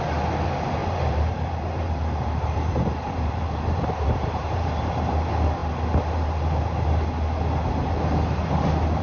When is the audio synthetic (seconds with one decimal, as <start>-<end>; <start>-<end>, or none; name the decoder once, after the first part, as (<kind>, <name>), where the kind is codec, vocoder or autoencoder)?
0.8-5.1 (vocoder, BigVGAN v2)